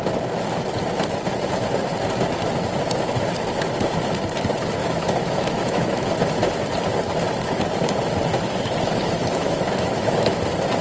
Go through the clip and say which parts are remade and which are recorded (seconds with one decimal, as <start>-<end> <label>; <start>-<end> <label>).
0.0-4.8 recorded; 4.8-6.1 remade; 6.1-9.4 recorded; 9.4-10.4 remade; 10.4-10.8 recorded